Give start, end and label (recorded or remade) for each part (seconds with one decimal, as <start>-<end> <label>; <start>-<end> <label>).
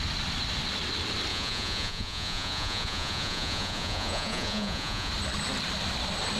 0.0-1.3 recorded; 1.3-5.1 remade; 5.1-6.4 recorded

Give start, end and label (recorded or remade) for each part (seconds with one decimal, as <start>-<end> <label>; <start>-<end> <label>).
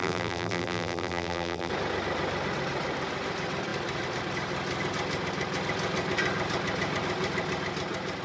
0.0-1.7 remade; 1.7-8.2 recorded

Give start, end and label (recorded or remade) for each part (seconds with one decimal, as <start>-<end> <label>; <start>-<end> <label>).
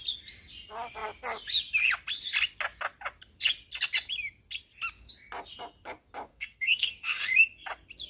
0.0-6.3 recorded; 6.3-7.2 remade; 7.2-8.1 recorded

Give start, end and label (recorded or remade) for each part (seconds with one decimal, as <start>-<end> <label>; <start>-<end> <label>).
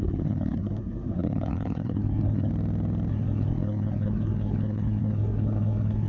0.0-2.5 remade; 2.5-3.1 recorded; 3.1-6.1 remade